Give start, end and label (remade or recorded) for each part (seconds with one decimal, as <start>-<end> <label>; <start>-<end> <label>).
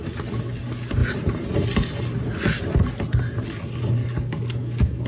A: 0.0-4.0 recorded; 4.0-5.1 remade